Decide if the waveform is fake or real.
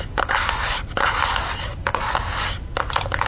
real